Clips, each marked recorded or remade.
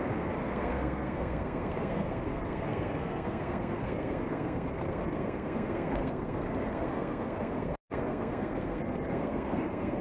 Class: remade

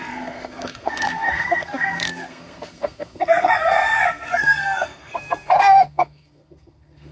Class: remade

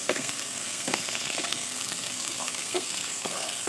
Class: remade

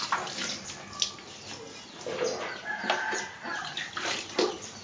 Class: recorded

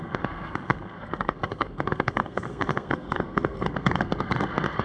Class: remade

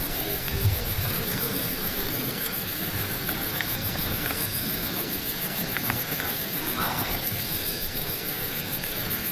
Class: remade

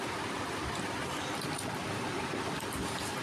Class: recorded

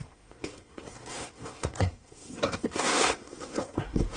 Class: remade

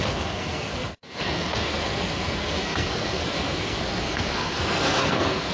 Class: remade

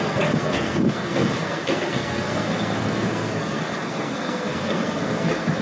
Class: remade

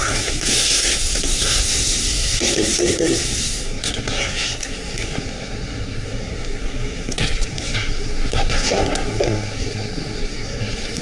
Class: remade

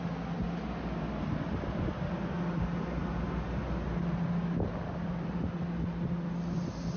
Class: recorded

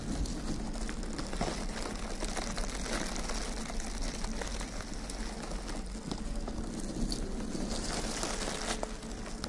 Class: recorded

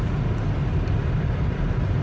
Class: recorded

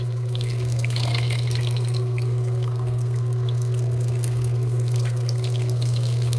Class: remade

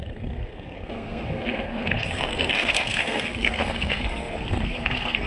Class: remade